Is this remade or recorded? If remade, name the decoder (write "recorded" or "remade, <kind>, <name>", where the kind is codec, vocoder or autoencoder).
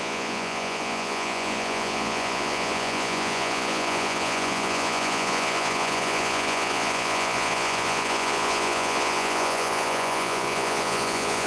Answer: remade, vocoder, Vocos